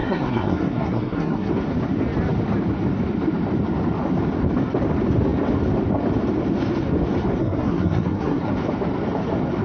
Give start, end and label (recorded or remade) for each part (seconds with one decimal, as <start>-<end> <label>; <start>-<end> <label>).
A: 0.0-1.5 remade; 1.5-7.4 recorded; 7.4-8.5 remade; 8.5-9.6 recorded